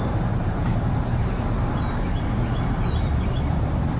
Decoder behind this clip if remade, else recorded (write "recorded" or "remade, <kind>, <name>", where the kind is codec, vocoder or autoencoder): remade, vocoder, BigVGAN v2